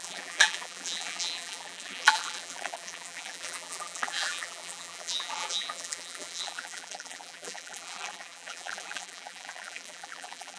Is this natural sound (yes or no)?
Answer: no